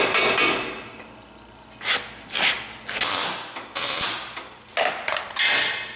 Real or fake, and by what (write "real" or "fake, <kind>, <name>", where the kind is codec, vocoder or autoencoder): real